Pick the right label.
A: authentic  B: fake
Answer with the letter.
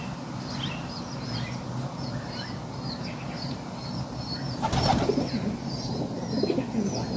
A